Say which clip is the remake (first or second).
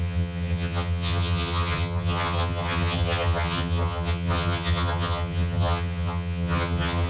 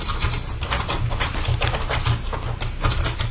first